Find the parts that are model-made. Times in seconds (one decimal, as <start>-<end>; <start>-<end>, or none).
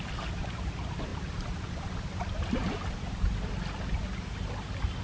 none